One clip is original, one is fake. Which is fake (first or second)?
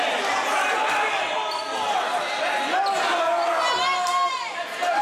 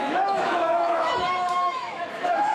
second